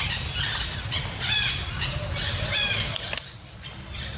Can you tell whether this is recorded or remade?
recorded